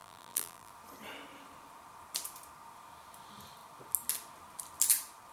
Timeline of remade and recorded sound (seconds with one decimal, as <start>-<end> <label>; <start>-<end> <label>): 0.0-0.7 remade; 0.7-5.3 recorded